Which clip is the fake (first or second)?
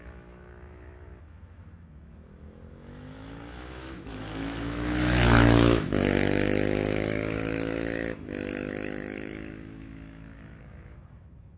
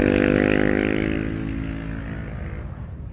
first